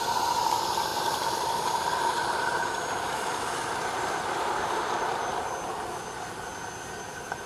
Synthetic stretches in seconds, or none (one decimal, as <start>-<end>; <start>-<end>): 0.9-5.2